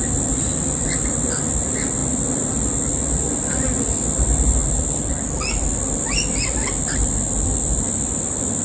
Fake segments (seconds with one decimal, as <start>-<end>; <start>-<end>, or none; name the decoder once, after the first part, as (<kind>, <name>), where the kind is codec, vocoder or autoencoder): 0.0-8.6 (vocoder, BigVGAN v2)